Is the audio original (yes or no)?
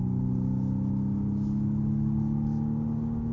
yes